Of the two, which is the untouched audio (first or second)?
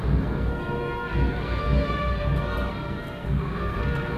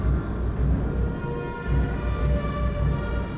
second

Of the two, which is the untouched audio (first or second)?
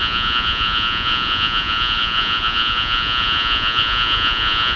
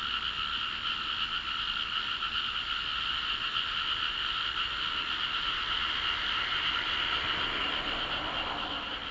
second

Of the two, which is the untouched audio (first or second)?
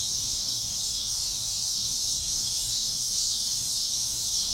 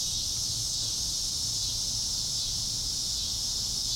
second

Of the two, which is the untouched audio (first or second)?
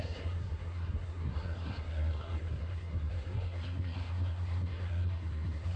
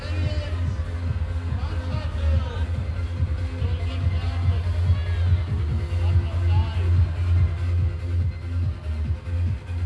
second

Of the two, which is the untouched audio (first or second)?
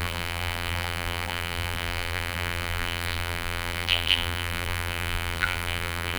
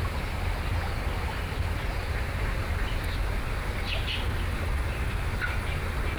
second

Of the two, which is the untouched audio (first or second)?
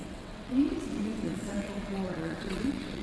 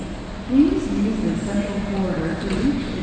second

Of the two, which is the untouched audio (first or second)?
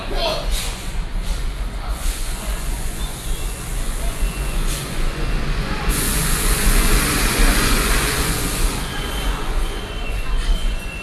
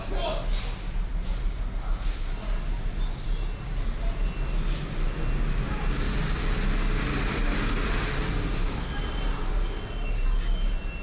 second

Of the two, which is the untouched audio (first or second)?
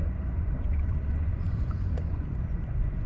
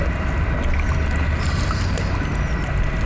second